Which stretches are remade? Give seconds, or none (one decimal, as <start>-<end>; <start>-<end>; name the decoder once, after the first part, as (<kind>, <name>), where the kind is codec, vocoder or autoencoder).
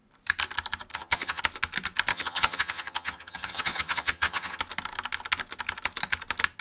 0.9-1.4 (vocoder, HiFi-GAN); 2.1-4.6